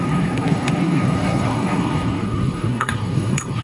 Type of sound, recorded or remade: remade